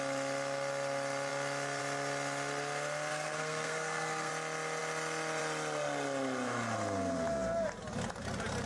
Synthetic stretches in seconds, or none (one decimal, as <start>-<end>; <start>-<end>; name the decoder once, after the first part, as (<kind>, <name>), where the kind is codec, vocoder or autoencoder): 3.1-4.3 (codec, SNAC)